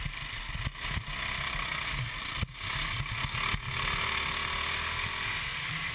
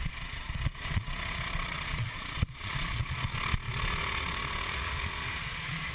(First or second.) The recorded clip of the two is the first